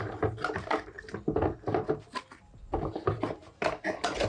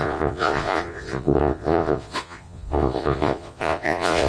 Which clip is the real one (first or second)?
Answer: first